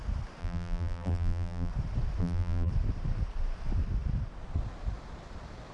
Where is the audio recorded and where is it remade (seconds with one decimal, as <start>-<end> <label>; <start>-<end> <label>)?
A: 0.0-0.4 recorded; 0.4-1.7 remade; 1.7-2.2 recorded; 2.2-2.7 remade; 2.7-5.7 recorded